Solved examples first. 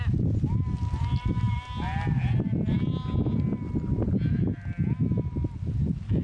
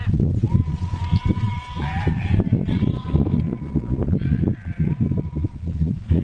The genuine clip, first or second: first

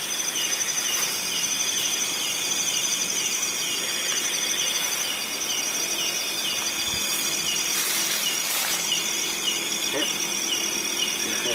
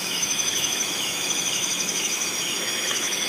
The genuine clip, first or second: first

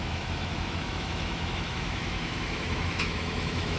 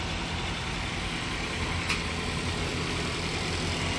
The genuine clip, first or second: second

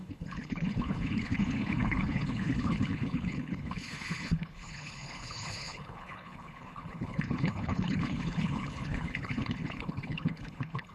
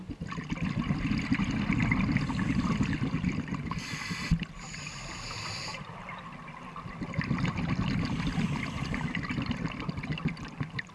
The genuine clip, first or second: second